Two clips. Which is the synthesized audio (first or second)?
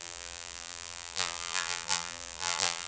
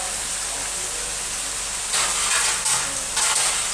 first